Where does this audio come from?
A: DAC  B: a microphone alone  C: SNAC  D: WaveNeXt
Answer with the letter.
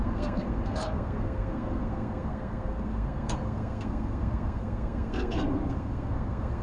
C